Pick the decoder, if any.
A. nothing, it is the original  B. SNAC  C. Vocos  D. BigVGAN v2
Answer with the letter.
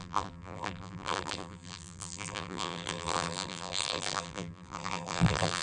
D